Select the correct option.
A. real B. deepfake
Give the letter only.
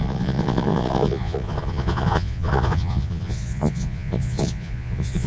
B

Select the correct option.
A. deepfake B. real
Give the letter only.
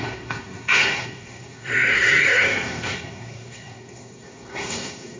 A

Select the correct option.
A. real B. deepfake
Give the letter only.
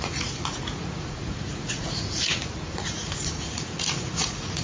B